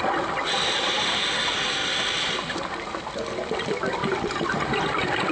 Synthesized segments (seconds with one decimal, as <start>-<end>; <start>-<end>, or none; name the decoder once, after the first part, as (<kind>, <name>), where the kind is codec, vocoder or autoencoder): none